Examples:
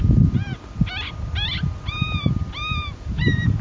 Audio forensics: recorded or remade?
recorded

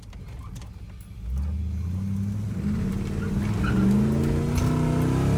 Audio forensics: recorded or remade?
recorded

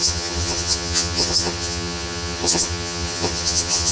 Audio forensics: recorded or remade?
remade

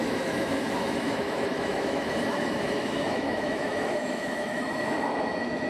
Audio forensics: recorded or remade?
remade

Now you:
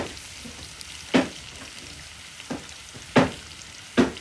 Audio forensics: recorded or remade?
recorded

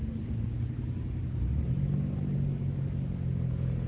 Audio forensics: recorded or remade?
recorded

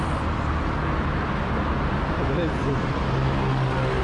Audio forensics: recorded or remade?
recorded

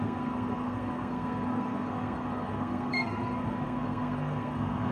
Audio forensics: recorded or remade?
remade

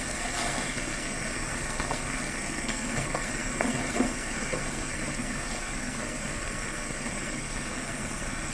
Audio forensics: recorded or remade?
remade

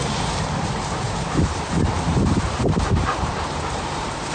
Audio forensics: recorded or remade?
remade